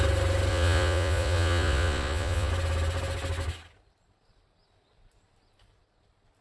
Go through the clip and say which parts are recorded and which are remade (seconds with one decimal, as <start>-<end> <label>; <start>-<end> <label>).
0.0-0.5 recorded; 0.5-2.5 remade; 2.5-6.4 recorded